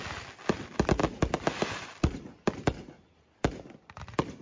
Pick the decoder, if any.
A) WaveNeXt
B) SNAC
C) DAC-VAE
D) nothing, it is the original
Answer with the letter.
D